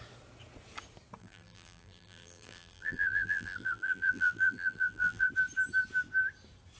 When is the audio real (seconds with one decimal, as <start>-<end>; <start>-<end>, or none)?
0.0-1.2; 5.3-6.8